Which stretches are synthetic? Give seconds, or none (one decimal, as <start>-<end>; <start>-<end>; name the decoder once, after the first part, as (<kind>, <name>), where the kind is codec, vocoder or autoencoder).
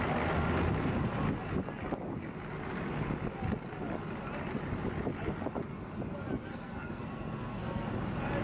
6.5-7.9 (codec, SNAC)